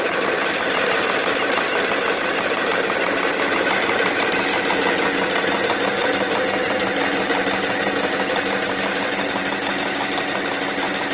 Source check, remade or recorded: recorded